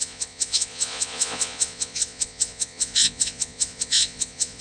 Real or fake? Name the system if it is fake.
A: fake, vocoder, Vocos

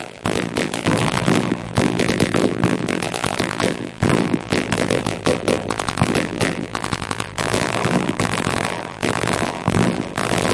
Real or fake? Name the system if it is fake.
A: fake, vocoder, BigVGAN v2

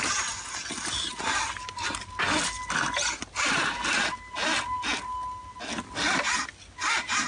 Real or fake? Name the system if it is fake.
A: real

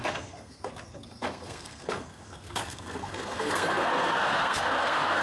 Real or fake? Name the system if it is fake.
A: fake, codec, SNAC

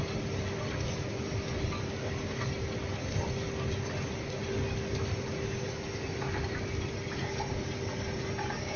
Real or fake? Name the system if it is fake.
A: real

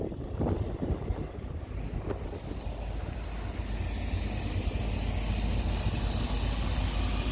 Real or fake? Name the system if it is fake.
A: real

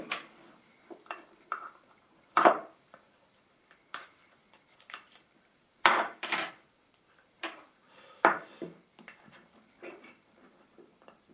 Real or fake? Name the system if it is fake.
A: fake, vocoder, BigVGAN v2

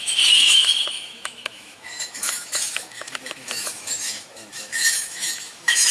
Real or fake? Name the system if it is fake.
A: fake, autoencoder, DAC-VAE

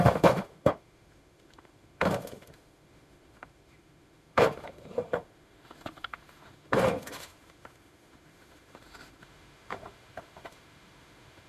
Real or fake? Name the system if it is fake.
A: fake, autoencoder, DAC-VAE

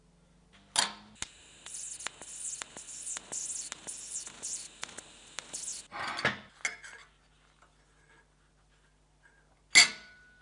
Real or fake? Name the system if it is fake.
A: real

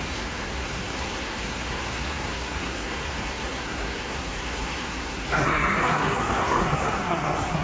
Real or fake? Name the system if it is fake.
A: fake, codec, SNAC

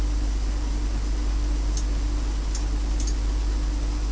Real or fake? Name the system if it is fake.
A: real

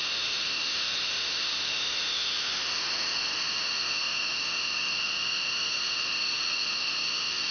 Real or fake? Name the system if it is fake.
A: fake, autoencoder, DAC-VAE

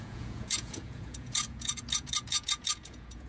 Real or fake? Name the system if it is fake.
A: fake, vocoder, Vocos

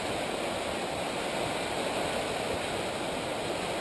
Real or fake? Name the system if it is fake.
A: real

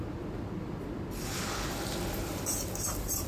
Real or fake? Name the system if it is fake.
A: fake, vocoder, BigVGAN v2